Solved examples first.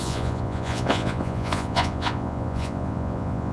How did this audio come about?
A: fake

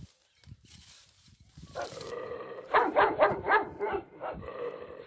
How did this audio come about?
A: fake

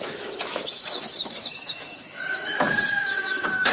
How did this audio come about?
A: fake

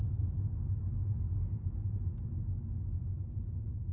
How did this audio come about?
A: real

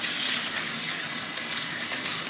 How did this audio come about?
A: real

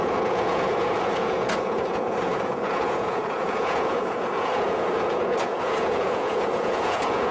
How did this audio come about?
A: fake